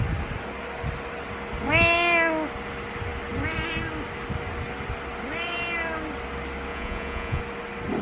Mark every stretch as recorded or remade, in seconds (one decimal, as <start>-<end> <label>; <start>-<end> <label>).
0.0-6.7 recorded; 6.7-7.4 remade; 7.4-8.0 recorded